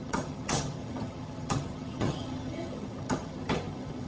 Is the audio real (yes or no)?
no